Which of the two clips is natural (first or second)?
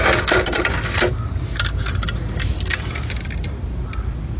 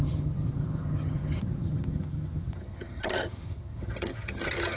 first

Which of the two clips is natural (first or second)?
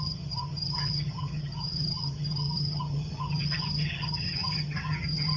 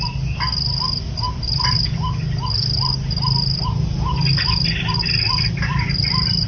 second